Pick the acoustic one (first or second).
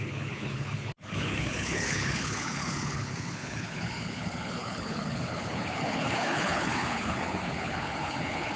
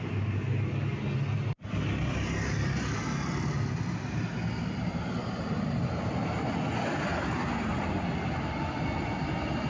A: second